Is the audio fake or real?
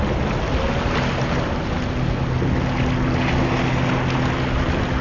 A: real